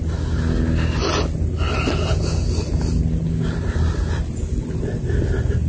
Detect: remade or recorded recorded